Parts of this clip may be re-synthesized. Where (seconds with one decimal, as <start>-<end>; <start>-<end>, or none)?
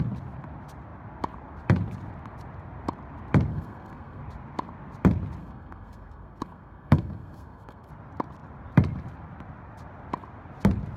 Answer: 3.5-4.2; 5.4-7.9